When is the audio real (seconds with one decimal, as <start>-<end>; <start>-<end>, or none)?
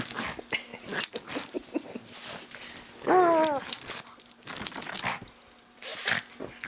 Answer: 0.0-6.7